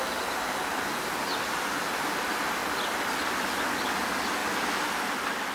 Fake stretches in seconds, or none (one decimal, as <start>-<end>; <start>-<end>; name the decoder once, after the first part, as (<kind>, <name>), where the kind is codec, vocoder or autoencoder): none